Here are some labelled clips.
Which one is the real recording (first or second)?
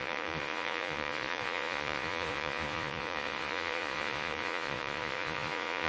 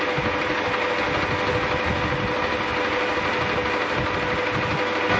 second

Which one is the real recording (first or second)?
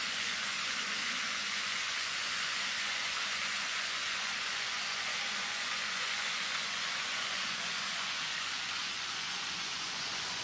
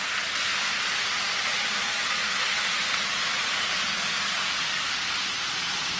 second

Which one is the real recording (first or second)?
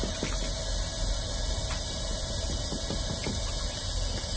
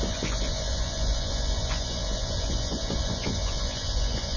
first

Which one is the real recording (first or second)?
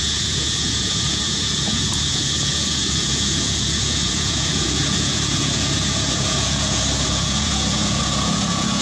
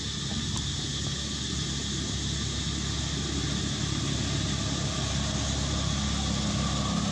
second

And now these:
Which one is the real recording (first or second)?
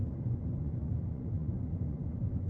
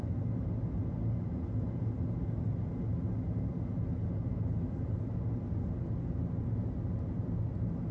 second